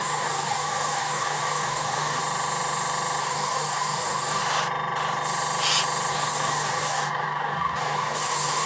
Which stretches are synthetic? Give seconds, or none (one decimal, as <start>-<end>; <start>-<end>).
0.0-2.2; 3.2-4.4; 6.1-8.7